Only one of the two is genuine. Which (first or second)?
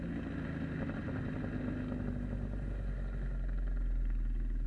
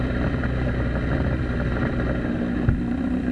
first